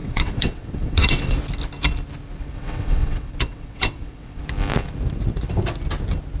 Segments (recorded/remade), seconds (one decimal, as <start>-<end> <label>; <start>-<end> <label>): 0.0-1.4 remade; 1.4-2.4 recorded; 2.4-4.4 remade; 4.4-6.4 recorded